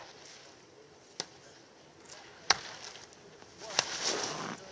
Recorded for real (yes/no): yes